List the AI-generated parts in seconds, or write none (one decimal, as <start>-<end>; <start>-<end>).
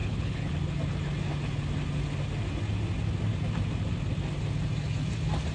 0.0-0.5